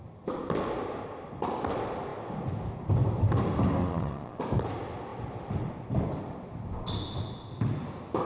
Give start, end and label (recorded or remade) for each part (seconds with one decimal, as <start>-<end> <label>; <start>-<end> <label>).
0.0-3.8 recorded; 3.8-4.4 remade; 4.4-8.2 recorded